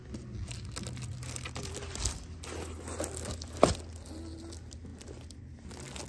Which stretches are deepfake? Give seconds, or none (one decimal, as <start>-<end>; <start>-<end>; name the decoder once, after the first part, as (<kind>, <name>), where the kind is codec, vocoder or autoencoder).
none